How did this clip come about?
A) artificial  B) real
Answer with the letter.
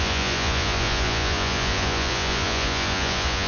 A